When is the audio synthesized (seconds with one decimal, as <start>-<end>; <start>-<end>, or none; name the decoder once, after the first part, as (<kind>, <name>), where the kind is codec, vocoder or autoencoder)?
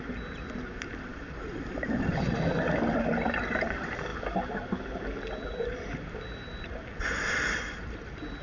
none